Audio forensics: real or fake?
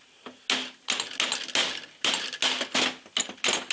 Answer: real